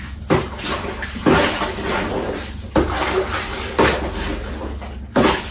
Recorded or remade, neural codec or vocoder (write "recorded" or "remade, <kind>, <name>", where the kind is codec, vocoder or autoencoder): recorded